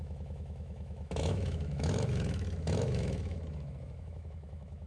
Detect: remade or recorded remade